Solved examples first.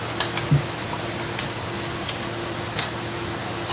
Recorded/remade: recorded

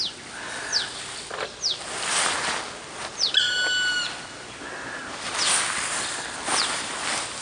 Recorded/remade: recorded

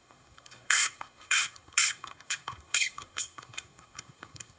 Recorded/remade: remade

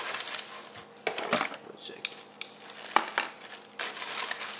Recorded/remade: recorded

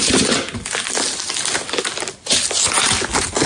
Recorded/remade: recorded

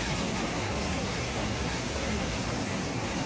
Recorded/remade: remade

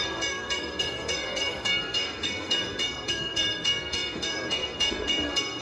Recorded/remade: remade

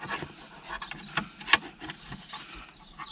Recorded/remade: recorded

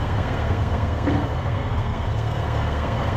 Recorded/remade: remade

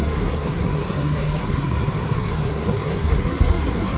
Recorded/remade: remade